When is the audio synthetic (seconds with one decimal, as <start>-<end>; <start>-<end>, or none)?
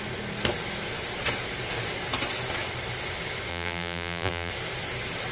3.5-4.5